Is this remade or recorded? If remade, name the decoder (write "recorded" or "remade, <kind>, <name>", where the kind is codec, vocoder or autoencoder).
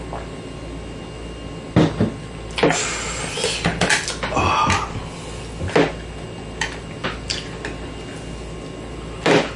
recorded